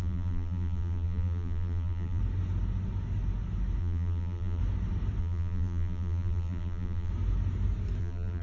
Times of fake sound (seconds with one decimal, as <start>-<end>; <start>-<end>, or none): 0.0-2.2; 3.8-4.6; 5.2-7.1; 8.0-8.4